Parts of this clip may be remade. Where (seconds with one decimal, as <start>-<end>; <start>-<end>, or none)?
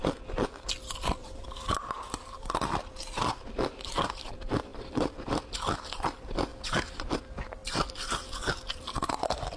1.2-2.5; 4.7-5.4; 6.5-7.1